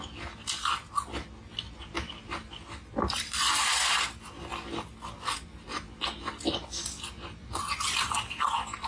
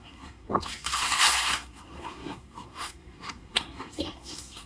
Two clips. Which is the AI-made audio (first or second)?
second